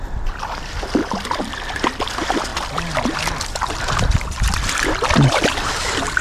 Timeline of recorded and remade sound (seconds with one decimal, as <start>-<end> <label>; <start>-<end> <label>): 0.0-1.0 recorded; 1.0-2.0 remade; 2.0-2.5 recorded; 2.5-5.7 remade; 5.7-6.2 recorded